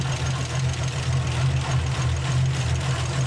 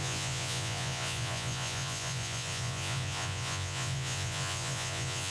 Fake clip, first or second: second